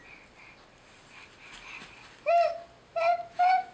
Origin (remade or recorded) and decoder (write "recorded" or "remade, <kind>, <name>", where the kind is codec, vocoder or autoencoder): recorded